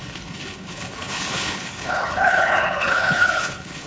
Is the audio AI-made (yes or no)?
yes